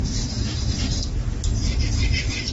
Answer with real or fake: real